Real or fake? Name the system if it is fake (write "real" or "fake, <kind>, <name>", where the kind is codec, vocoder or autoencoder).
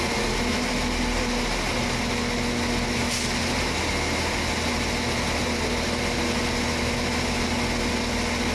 real